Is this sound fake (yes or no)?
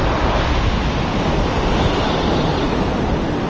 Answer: no